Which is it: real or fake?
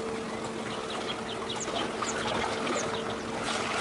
real